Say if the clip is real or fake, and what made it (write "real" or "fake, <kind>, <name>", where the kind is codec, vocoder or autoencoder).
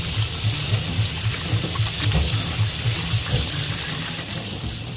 real